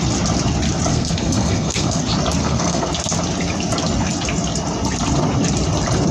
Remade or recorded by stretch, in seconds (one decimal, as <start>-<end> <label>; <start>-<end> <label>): 0.0-0.9 recorded; 0.9-2.0 remade; 2.0-2.4 recorded; 2.4-2.9 remade; 2.9-6.1 recorded